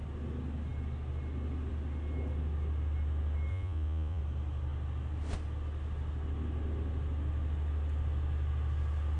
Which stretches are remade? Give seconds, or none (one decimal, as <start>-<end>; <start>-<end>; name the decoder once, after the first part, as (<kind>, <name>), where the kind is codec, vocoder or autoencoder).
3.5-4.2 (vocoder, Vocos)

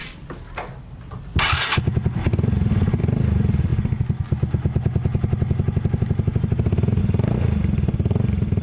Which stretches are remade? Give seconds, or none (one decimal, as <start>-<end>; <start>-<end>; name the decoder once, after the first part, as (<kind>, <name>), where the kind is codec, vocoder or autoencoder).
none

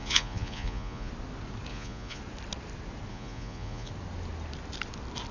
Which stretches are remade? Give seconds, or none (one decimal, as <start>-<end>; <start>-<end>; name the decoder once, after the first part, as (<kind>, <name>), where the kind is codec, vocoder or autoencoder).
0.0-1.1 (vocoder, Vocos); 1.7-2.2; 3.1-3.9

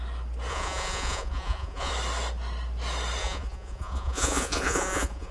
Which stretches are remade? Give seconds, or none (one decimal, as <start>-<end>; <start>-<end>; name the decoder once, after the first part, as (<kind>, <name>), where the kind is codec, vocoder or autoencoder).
0.5-1.9 (vocoder, Vocos); 3.2-5.3

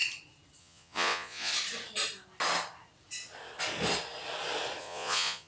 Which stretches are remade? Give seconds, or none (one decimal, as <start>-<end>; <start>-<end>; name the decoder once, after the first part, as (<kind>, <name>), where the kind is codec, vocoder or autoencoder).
0.6-1.5 (vocoder, Vocos); 4.8-5.5

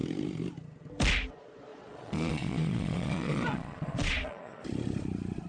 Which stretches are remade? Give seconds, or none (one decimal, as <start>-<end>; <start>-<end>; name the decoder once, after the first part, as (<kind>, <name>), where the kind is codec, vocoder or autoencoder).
1.7-4.6 (vocoder, Vocos)

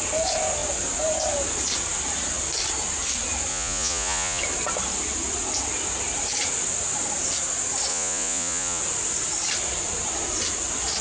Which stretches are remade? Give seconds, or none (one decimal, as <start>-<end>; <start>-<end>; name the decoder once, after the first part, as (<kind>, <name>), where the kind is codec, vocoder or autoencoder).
3.5-4.4 (vocoder, Vocos); 7.9-8.8

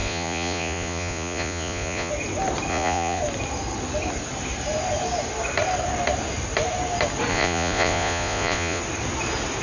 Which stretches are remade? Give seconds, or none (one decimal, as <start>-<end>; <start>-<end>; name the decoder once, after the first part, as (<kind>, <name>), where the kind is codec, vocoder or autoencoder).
0.0-2.1 (vocoder, Vocos); 2.7-3.2; 7.3-8.8